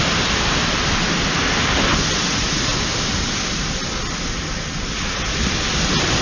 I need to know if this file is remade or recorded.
recorded